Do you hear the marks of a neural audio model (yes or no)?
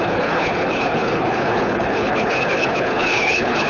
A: yes